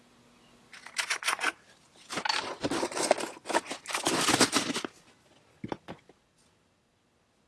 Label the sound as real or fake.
real